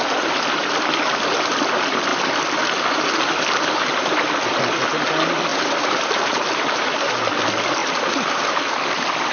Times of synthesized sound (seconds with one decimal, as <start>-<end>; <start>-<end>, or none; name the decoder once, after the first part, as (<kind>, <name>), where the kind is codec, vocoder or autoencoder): 5.5-6.9 (vocoder, BigVGAN v2); 7.8-8.4